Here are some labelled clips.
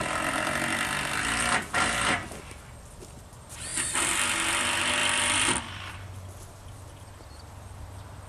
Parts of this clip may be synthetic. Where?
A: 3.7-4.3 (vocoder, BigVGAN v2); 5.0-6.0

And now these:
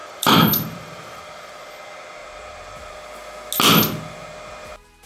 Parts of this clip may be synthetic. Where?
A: 0.0-1.2 (vocoder, BigVGAN v2)

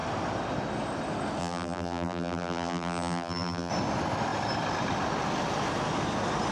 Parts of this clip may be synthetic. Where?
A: 1.4-3.7 (vocoder, BigVGAN v2)